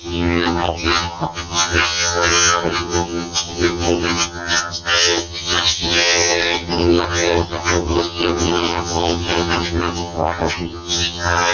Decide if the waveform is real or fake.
fake